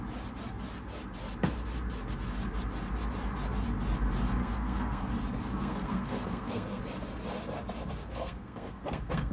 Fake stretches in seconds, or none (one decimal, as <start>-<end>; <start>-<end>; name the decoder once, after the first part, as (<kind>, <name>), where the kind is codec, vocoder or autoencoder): 4.4-5.1 (codec, SNAC); 5.5-6.8; 8.0-9.3

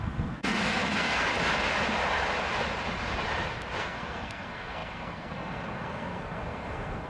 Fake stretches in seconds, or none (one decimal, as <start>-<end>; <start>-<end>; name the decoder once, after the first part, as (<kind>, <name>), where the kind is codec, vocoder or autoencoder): 0.0-1.3 (codec, SNAC); 3.8-7.1

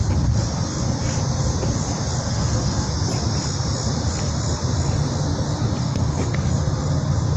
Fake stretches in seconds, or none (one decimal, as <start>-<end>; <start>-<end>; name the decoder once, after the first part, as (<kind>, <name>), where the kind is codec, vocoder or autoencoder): 2.2-2.9 (codec, SNAC); 5.8-6.5

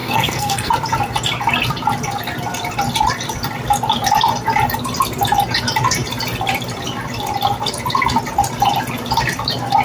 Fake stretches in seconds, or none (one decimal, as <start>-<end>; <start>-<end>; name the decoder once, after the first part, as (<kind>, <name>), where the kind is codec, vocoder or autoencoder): 0.0-0.7 (codec, SNAC)